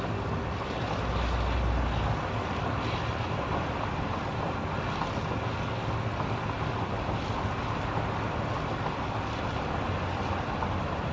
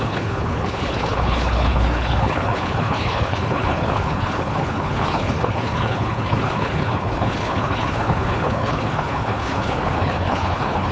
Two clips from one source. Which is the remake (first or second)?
second